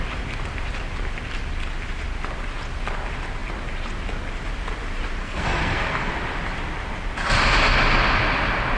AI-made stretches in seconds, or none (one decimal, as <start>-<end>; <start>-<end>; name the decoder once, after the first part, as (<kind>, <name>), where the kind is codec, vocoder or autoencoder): 5.2-6.1 (codec, SNAC)